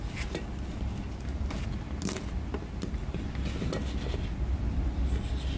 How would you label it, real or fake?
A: real